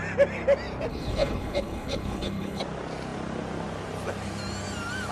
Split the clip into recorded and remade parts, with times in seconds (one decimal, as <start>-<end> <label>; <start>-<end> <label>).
0.0-0.9 recorded; 0.9-2.6 remade; 2.6-5.1 recorded